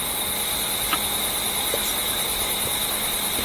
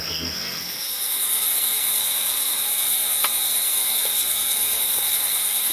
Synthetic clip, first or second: second